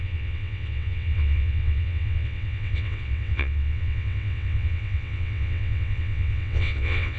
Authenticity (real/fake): fake